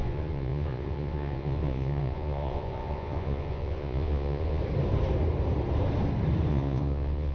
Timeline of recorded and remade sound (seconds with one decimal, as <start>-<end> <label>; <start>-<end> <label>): 0.0-4.6 remade; 4.6-6.5 recorded; 6.5-7.3 remade